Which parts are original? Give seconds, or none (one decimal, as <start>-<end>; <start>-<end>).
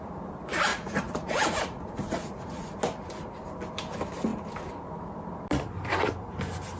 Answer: 0.0-0.7; 2.8-6.8